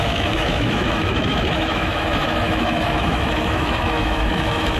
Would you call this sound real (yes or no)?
no